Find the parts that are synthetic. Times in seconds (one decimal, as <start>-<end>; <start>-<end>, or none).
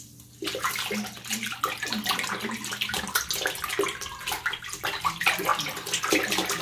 none